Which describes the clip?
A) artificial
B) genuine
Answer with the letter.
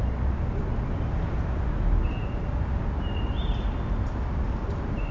B